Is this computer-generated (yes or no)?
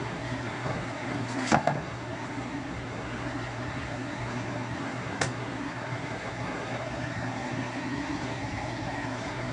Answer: yes